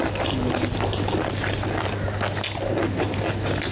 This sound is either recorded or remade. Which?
recorded